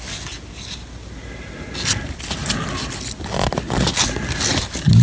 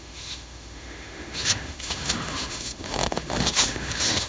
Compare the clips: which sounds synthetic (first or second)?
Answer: second